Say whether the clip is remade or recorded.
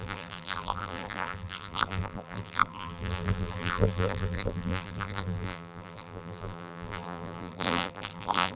remade